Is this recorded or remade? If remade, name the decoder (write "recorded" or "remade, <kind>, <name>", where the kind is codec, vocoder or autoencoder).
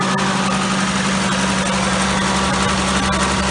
recorded